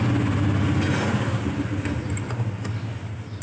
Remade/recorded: recorded